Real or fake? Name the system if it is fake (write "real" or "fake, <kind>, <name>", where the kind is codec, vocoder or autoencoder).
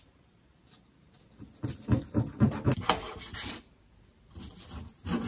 real